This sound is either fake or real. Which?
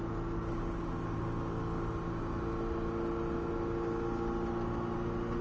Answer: real